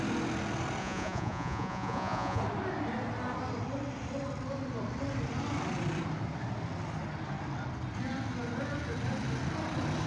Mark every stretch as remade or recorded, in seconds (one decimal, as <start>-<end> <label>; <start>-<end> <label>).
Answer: 0.0-0.8 recorded; 0.8-2.4 remade; 2.4-10.1 recorded